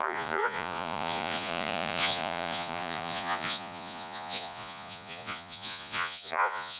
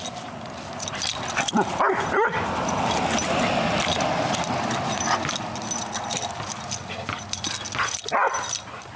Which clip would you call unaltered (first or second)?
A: second